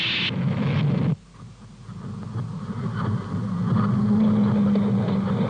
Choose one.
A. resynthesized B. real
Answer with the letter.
B